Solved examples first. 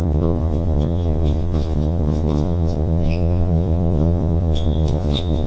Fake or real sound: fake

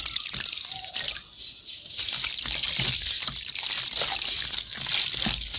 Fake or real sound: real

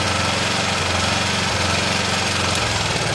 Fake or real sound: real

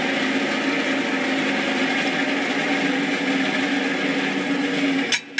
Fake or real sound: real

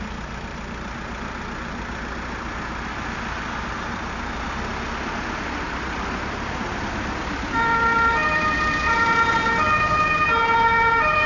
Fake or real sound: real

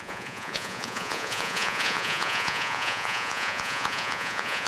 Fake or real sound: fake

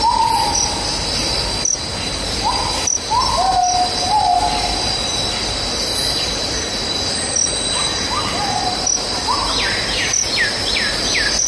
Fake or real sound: real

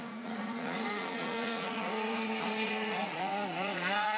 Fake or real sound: fake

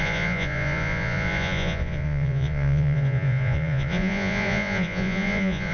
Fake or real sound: fake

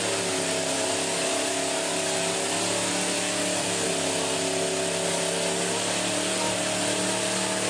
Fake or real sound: real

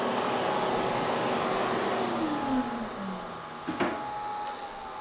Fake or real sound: real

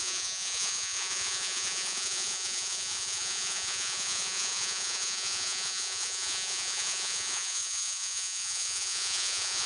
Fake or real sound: fake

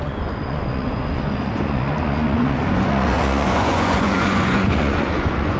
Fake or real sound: fake